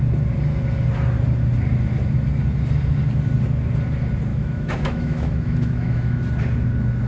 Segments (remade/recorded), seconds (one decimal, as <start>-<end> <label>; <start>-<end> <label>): 0.0-4.3 recorded; 4.3-6.2 remade; 6.2-7.1 recorded